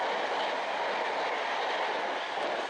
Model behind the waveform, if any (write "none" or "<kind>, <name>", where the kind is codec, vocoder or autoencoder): none